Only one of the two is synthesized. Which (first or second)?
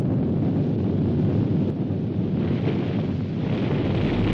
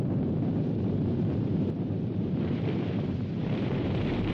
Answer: second